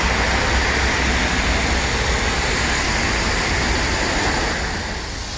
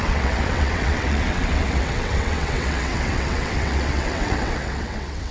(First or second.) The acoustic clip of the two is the first